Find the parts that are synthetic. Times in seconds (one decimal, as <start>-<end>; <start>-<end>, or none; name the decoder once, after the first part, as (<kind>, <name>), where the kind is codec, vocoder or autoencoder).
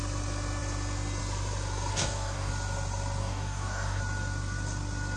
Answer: 1.9-2.5 (codec, DAC); 3.2-4.0